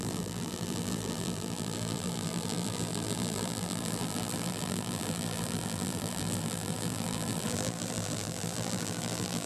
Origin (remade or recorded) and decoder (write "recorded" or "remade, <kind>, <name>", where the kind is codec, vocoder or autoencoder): remade, vocoder, BigVGAN v2